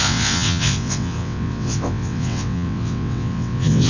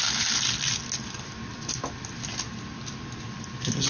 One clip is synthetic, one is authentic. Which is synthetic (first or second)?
first